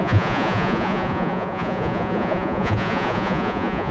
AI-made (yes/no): yes